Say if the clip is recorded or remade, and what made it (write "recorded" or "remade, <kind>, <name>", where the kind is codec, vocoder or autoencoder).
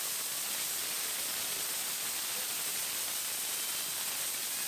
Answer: recorded